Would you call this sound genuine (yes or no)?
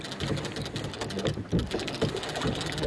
yes